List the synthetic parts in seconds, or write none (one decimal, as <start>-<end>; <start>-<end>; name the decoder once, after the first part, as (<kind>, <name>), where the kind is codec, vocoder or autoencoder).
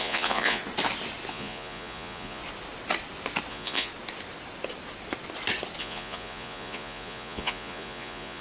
0.0-0.6 (vocoder, Vocos); 1.3-2.4; 3.5-3.9; 5.8-8.4